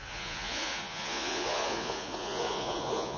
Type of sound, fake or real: fake